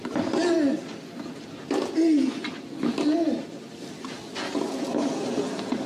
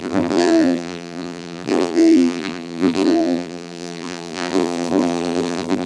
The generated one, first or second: second